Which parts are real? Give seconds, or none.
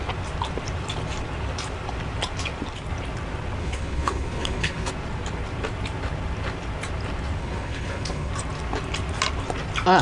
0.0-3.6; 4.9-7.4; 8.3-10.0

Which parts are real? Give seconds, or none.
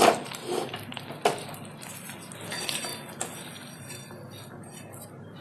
0.0-5.4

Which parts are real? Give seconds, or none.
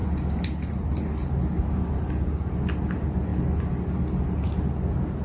0.0-5.2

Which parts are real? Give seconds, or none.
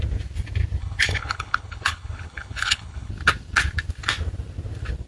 0.0-0.8; 3.1-5.1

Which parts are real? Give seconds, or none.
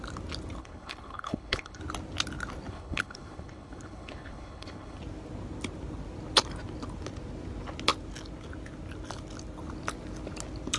0.0-0.6; 1.8-2.7; 5.0-10.8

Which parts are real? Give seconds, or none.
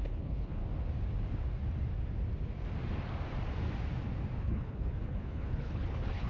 0.6-4.4